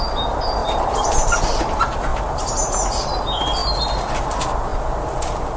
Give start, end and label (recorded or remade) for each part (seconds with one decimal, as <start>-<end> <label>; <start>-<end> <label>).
0.0-0.6 recorded; 0.6-1.4 remade; 1.4-2.1 recorded; 2.1-3.2 remade; 3.2-5.6 recorded